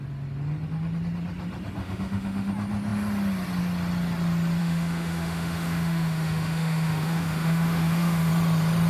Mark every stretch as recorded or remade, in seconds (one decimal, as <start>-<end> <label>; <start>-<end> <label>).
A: 0.0-1.8 recorded; 1.8-2.5 remade; 2.5-4.6 recorded; 4.6-8.3 remade; 8.3-8.9 recorded